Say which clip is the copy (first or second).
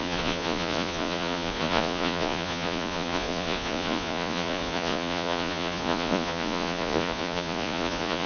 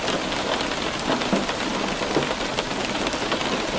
first